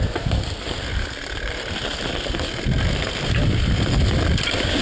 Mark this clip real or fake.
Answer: real